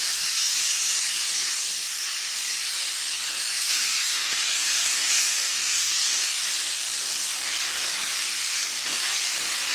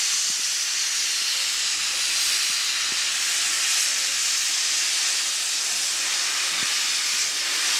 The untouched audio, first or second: second